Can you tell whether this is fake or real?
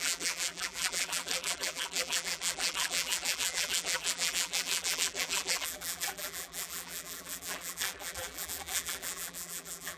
fake